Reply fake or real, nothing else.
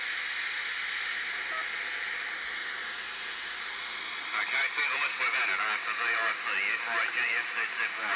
real